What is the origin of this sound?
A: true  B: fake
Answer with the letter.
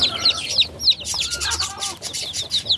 A